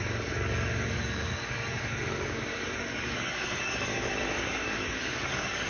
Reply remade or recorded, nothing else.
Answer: remade